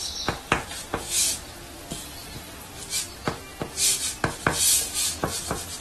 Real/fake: real